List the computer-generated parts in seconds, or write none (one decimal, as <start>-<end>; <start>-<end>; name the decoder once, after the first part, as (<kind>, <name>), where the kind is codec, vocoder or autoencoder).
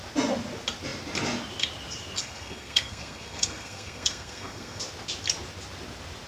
2.2-4.8 (codec, SNAC)